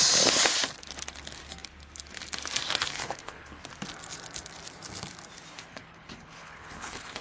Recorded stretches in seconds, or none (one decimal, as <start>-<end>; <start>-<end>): 0.0-2.9; 3.6-5.5